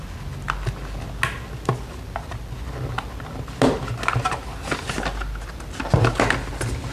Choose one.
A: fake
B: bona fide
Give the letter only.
B